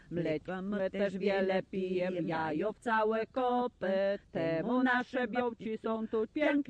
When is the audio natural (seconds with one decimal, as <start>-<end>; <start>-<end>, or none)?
0.0-2.0; 2.4-5.4